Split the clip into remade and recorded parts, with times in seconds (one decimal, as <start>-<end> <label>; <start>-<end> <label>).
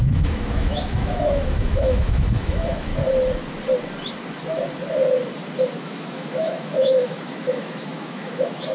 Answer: 0.0-2.9 remade; 2.9-5.8 recorded; 5.8-8.7 remade